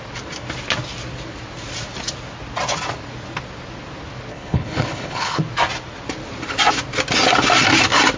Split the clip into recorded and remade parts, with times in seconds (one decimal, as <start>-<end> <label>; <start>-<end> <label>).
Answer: 0.0-4.3 recorded; 4.3-5.4 remade; 5.4-8.2 recorded